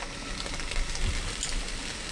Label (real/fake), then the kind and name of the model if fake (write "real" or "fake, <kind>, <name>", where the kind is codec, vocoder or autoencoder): real